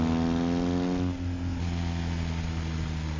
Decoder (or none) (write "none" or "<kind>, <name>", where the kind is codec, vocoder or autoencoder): none